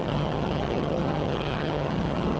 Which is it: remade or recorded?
remade